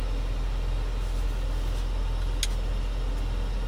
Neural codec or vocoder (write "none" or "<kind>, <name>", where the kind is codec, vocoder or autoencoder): none